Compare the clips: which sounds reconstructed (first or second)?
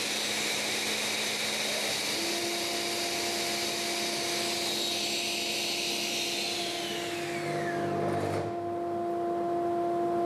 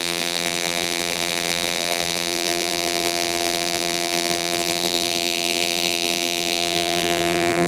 second